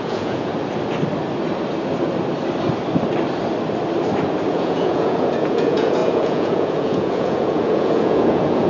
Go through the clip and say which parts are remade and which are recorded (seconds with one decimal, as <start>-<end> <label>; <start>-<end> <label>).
0.0-0.5 remade; 0.5-4.5 recorded; 4.5-8.7 remade